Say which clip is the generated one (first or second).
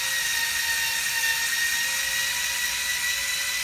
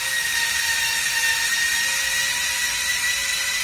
second